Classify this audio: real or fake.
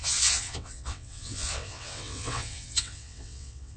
fake